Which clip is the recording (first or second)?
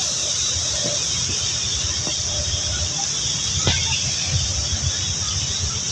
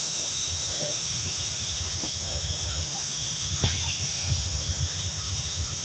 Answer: first